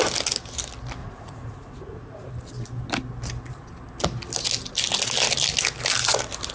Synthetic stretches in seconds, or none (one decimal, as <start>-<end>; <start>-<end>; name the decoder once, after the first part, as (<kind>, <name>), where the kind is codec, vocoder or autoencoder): 1.0-2.3 (vocoder, Vocos)